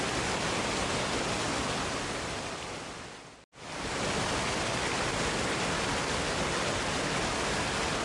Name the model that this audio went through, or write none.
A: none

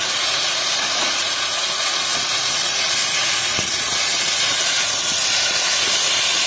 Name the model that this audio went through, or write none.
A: vocoder, Vocos